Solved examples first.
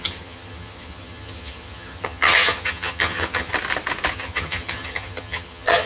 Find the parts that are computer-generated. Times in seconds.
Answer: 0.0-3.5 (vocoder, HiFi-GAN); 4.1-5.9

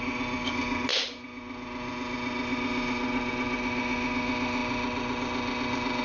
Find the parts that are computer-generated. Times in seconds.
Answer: none

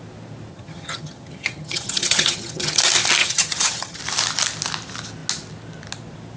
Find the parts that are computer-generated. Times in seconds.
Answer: 0.5-2.8 (vocoder, HiFi-GAN); 3.2-4.0

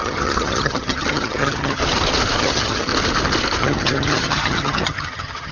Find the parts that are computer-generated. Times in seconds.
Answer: 0.0-1.8 (vocoder, HiFi-GAN); 2.4-2.9; 3.6-5.5

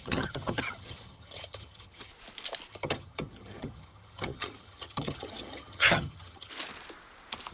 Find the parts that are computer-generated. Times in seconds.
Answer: 0.0-2.1 (vocoder, HiFi-GAN); 2.7-6.5

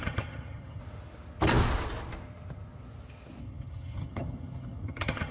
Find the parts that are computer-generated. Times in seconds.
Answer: 0.0-0.8 (vocoder, HiFi-GAN); 3.4-5.3